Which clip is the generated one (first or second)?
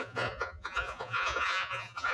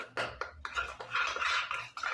first